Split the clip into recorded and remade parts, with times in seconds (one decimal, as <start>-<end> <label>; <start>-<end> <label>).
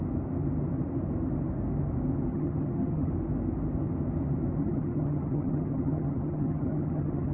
0.0-2.3 recorded; 2.3-3.1 remade; 3.1-4.6 recorded; 4.6-7.3 remade